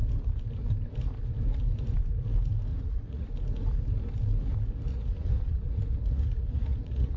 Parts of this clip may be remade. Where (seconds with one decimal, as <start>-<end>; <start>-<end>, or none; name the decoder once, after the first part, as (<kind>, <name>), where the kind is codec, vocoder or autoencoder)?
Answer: 2.7-3.3 (vocoder, Vocos); 4.9-7.2